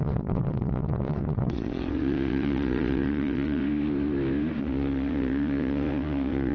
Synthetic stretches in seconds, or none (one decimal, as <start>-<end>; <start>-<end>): 0.0-3.6; 4.6-6.5